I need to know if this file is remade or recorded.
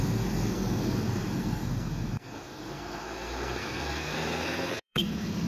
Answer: remade